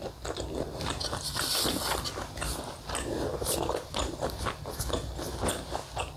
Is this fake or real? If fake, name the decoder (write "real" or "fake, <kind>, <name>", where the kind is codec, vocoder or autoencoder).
real